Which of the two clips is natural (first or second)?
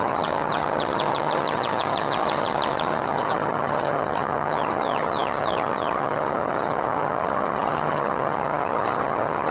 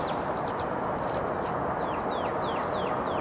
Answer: second